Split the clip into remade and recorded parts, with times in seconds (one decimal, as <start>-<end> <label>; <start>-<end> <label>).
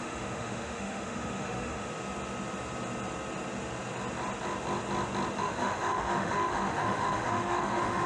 0.0-1.9 remade; 1.9-5.4 recorded; 5.4-8.1 remade